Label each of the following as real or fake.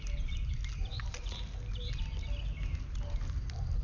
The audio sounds real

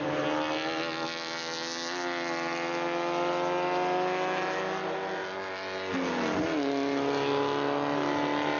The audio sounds real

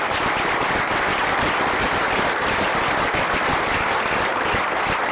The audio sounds real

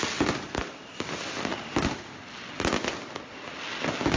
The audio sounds real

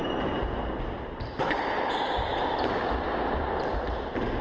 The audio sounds real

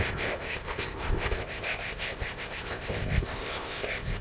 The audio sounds fake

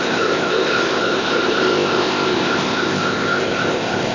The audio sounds fake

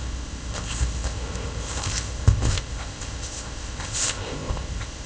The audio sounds fake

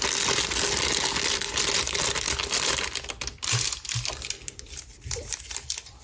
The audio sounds real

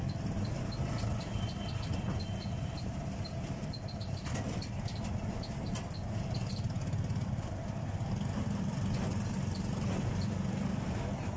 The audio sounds real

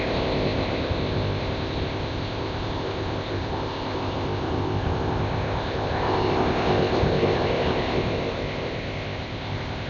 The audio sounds fake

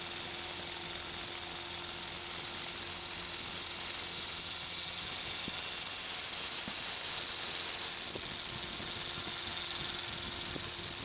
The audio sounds real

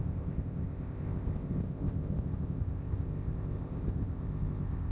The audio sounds fake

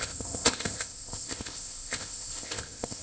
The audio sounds fake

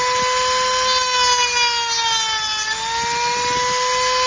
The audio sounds real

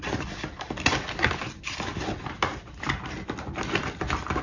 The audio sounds real